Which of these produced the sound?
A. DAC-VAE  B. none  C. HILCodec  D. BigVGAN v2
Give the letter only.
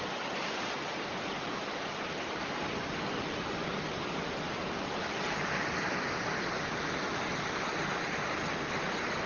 D